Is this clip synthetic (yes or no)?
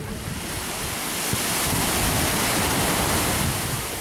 no